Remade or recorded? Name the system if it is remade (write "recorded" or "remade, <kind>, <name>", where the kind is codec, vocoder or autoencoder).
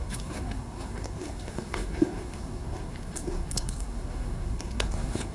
remade, codec, SNAC